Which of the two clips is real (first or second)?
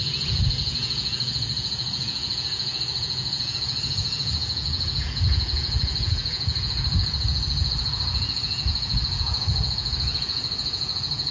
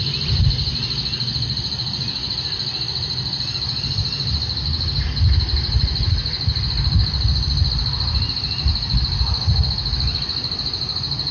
second